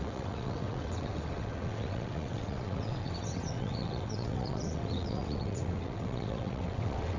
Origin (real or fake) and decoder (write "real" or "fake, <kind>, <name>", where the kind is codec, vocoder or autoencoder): fake, vocoder, WaveNeXt